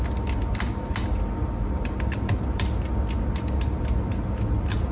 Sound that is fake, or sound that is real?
real